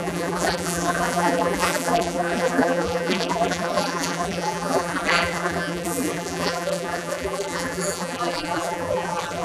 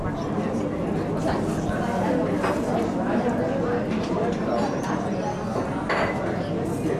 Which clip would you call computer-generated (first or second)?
first